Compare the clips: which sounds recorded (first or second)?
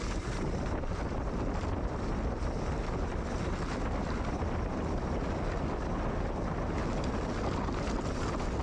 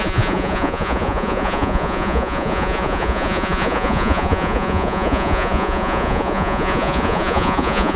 first